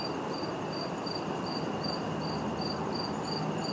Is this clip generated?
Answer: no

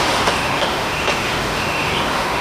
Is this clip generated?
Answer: yes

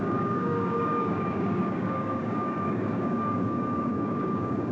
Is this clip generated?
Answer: yes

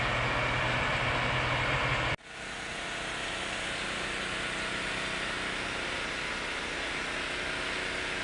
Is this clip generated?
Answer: no